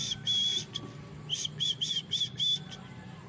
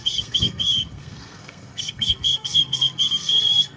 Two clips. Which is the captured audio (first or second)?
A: first